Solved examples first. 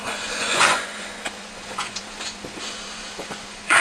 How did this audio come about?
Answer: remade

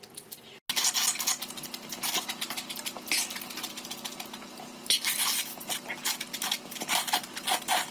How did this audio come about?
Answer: recorded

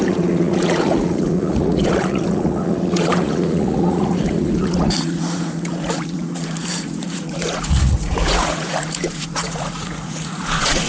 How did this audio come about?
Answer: remade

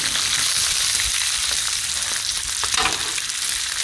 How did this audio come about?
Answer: recorded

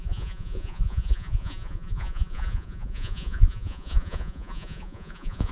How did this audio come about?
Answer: remade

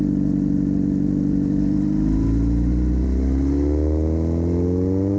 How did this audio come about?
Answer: recorded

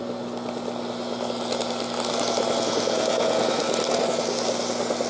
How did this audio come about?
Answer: recorded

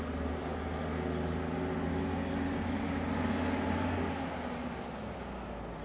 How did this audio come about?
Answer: recorded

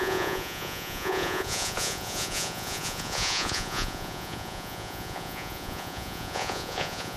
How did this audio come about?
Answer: remade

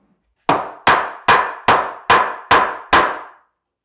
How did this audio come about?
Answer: recorded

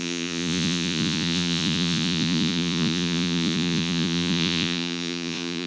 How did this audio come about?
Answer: remade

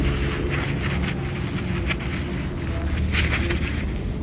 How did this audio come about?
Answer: recorded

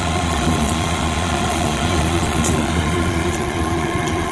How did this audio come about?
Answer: remade